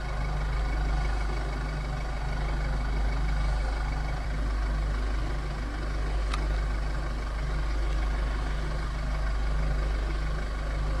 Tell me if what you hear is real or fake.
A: real